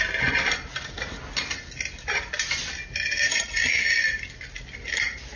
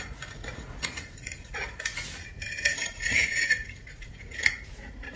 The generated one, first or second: second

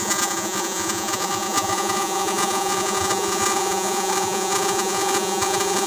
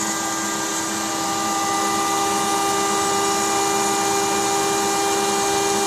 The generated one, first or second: first